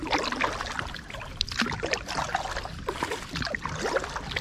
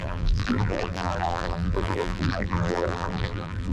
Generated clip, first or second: second